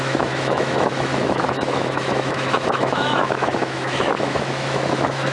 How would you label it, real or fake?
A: fake